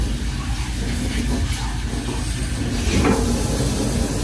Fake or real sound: real